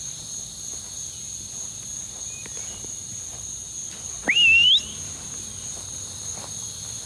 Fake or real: real